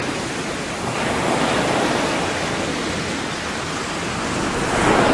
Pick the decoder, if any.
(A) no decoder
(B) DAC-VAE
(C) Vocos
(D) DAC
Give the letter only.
A